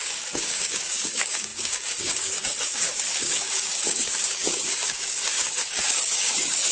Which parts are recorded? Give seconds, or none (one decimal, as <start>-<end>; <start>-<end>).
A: none